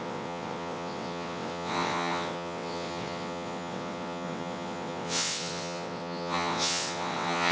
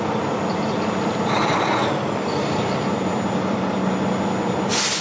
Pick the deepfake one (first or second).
first